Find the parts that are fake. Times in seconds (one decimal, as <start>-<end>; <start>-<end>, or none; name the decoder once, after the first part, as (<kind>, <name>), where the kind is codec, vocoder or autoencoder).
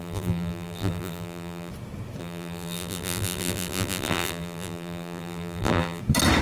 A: 0.0-1.7 (vocoder, BigVGAN v2); 2.2-6.0